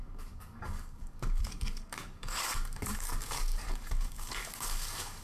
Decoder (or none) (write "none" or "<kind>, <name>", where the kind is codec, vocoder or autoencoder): codec, DAC